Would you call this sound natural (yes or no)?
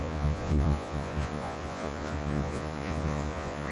no